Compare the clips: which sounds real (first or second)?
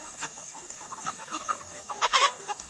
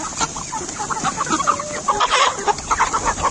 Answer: second